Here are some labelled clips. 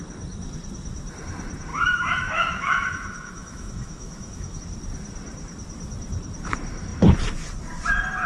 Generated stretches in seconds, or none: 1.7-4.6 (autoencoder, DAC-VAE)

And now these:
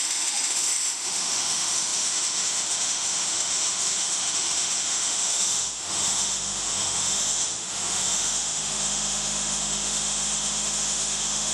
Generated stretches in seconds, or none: 0.0-11.5 (autoencoder, DAC-VAE)

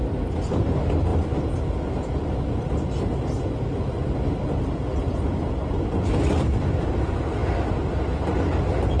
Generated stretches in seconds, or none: none

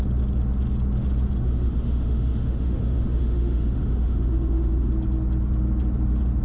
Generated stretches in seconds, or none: 1.4-4.9 (autoencoder, DAC-VAE)

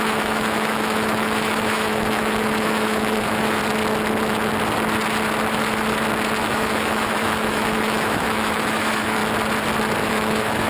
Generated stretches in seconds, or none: 0.0-3.6 (autoencoder, DAC-VAE); 6.4-9.2; 10.1-10.7

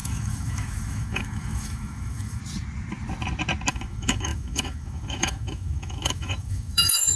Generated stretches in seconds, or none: 0.0-2.4 (autoencoder, DAC-VAE); 3.7-7.2

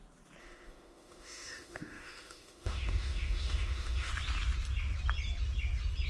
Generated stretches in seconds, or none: 0.4-4.1 (autoencoder, DAC-VAE)